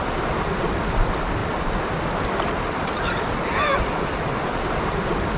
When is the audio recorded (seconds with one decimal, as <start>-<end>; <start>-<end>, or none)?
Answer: 0.0-5.4